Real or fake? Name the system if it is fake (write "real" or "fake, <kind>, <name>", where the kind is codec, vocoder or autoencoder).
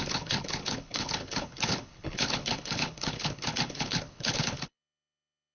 fake, codec, HILCodec